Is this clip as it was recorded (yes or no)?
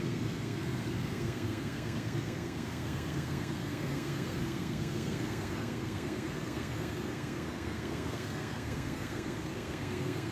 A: no